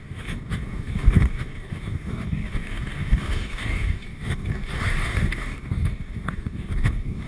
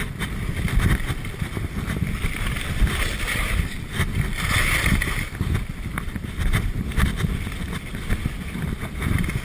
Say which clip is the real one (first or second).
second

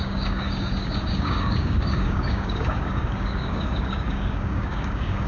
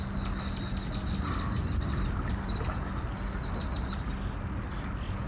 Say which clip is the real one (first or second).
second